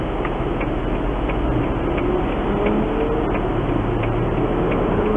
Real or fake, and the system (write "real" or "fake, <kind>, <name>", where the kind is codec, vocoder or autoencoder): real